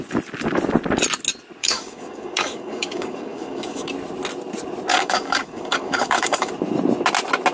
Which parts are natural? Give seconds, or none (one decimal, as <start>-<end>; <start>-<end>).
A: 0.0-1.6; 3.9-4.9; 6.5-7.5